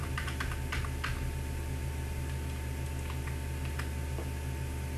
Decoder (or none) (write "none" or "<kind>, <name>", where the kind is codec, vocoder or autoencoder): none